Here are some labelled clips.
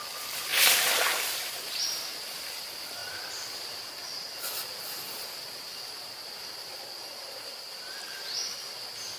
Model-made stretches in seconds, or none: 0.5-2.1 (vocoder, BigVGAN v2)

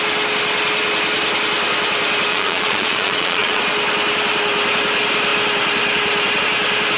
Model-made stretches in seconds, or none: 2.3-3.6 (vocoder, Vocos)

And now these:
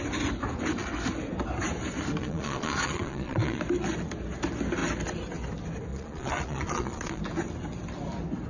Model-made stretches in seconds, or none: 2.2-3.6 (vocoder, Vocos); 5.9-7.2

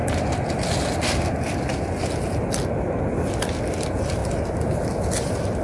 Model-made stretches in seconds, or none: none